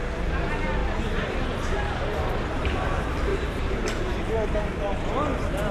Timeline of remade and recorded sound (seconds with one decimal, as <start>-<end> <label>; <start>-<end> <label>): 0.0-3.3 recorded; 3.3-4.2 remade; 4.2-5.7 recorded